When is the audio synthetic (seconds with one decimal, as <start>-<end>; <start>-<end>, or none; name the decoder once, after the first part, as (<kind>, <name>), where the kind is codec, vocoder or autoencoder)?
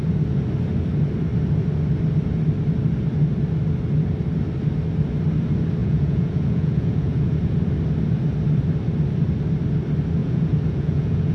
5.8-7.6 (vocoder, Vocos); 10.2-11.3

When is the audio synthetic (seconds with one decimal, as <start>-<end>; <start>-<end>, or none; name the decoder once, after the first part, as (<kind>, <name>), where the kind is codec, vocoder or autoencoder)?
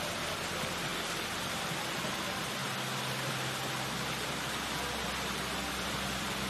0.0-0.9 (vocoder, BigVGAN v2); 1.8-2.6; 5.7-6.5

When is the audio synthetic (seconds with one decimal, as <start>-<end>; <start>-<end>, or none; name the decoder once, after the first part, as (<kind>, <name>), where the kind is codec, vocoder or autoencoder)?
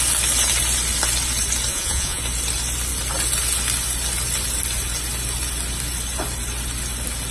1.7-2.2 (vocoder, Vocos)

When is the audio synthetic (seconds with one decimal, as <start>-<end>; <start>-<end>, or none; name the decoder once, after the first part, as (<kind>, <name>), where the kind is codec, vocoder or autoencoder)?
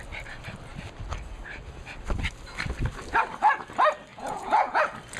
4.1-4.8 (vocoder, Vocos)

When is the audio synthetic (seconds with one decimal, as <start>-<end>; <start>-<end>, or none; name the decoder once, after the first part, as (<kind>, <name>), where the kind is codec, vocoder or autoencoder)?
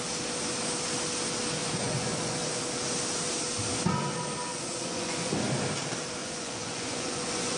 1.6-2.6 (vocoder, Vocos); 4.5-5.3; 6.2-7.6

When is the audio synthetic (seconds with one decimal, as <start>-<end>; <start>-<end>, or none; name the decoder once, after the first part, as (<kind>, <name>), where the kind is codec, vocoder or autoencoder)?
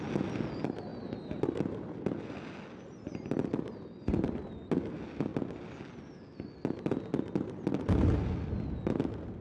none